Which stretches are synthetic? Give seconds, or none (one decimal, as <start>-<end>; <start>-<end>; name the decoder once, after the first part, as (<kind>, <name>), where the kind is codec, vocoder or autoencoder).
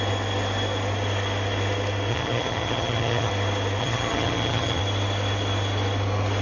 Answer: 2.1-3.3 (vocoder, HiFi-GAN); 3.8-4.8